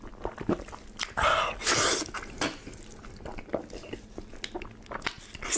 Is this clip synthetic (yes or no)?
no